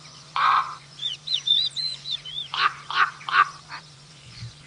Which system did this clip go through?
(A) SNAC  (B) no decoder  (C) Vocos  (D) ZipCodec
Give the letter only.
C